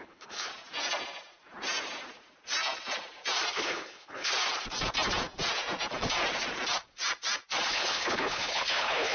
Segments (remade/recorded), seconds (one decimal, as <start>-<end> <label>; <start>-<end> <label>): 0.0-0.5 remade; 0.5-3.5 recorded; 3.5-4.3 remade; 4.3-7.7 recorded; 7.7-9.1 remade